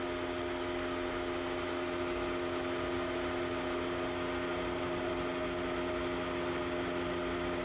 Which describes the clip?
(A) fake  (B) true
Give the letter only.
B